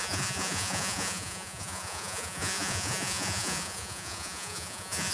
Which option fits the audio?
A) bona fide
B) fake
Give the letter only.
B